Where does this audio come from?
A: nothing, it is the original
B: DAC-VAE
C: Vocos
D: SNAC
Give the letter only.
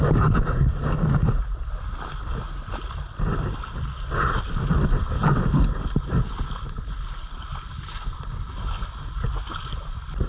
A